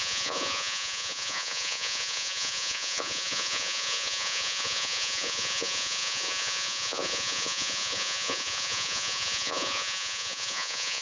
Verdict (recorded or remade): remade